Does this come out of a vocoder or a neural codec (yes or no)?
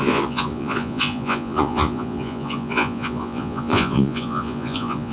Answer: yes